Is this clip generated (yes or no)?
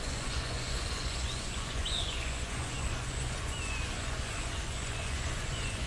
yes